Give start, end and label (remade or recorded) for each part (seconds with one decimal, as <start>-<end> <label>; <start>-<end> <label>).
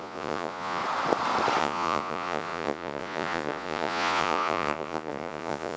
0.0-0.8 remade; 0.8-1.6 recorded; 1.6-5.8 remade